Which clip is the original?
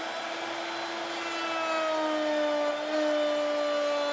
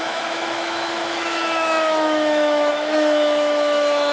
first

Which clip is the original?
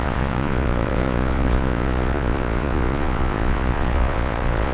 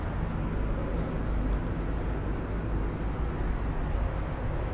second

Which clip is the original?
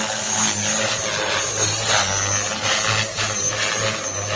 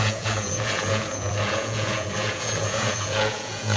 first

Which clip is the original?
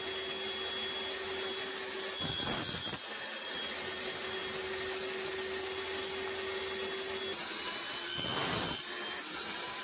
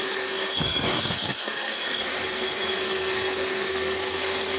first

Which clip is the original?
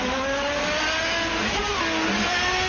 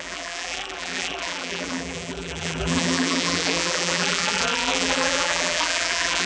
first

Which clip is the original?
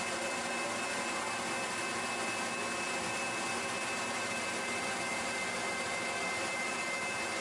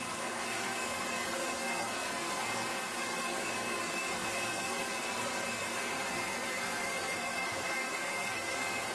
first